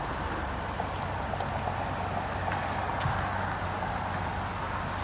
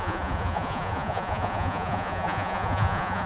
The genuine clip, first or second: first